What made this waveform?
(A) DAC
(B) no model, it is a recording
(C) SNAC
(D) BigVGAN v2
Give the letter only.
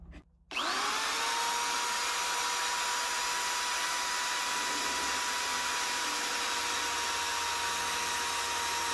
B